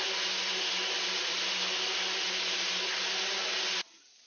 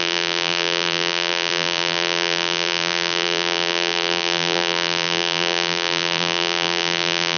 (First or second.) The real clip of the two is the first